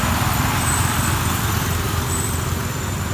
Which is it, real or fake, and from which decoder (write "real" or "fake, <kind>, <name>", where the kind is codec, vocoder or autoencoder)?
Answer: fake, vocoder, BigVGAN v2